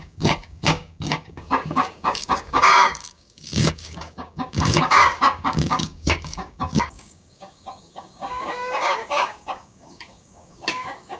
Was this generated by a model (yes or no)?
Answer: yes